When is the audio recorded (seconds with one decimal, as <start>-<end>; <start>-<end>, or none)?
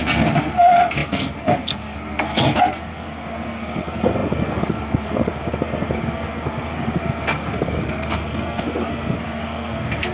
none